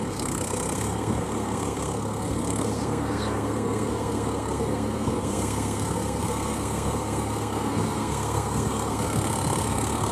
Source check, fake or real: fake